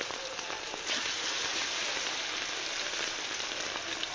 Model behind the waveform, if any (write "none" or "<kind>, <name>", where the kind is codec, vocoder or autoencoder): none